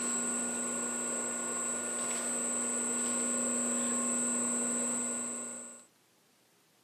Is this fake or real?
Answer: real